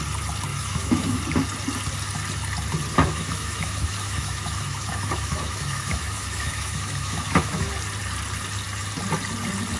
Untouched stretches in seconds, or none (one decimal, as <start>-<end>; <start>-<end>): 0.0-0.5; 1.2-2.9; 7.7-9.8